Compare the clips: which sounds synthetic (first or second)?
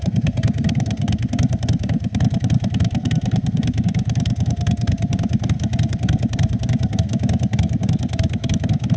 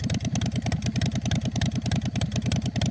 first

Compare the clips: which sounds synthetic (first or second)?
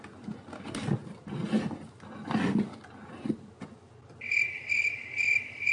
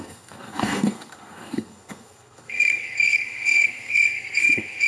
second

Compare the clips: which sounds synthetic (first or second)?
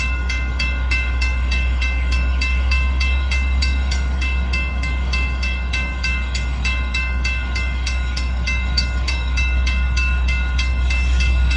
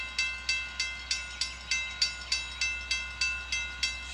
first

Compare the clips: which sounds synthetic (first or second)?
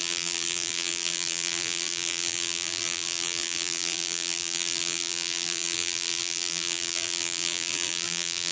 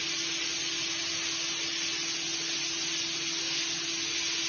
first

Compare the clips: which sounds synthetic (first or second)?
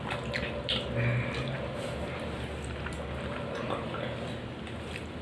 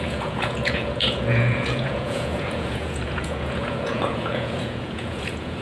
second